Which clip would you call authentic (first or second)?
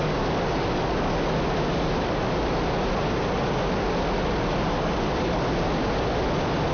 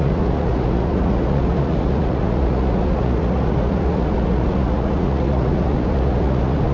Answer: first